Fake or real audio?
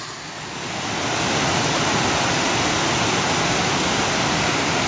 real